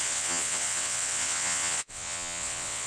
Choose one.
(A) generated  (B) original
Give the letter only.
A